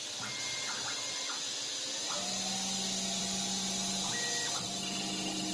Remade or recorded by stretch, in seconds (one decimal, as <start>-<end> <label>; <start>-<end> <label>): 0.0-5.5 recorded